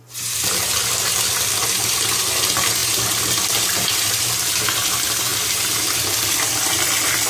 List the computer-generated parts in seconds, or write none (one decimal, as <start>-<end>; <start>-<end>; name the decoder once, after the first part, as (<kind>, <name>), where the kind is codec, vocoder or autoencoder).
none